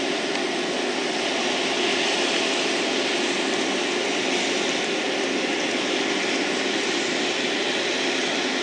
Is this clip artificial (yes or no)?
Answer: no